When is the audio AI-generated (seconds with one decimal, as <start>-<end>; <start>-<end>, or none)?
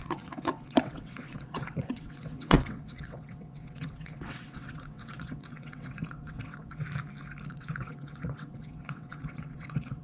0.0-6.8; 7.5-10.0